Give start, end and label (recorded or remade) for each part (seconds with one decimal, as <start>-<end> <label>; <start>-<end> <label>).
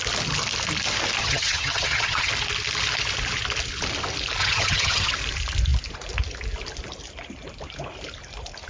0.0-1.2 recorded; 1.2-2.3 remade; 2.3-4.4 recorded; 4.4-5.1 remade; 5.1-8.7 recorded